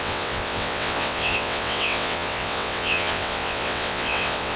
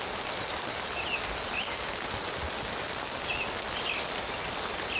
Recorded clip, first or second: second